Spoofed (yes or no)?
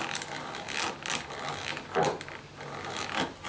no